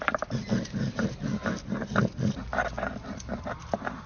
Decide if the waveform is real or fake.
real